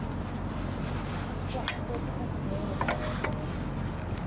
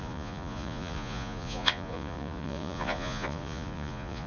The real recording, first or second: first